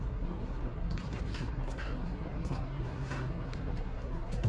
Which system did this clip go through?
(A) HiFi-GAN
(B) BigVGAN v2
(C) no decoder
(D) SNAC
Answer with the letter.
D